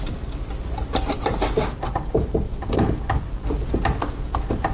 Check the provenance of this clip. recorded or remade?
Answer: recorded